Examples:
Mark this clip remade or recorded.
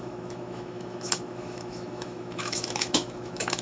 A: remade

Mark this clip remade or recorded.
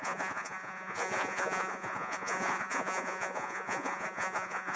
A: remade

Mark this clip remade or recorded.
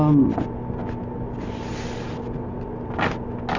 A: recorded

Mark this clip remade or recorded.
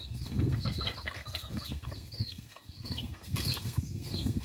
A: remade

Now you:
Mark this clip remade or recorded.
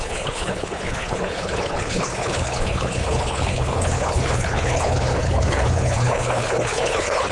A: remade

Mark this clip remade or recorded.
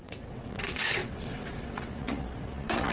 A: remade